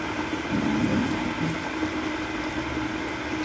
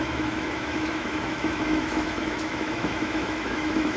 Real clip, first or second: first